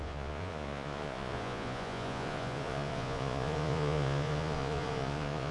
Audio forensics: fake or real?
fake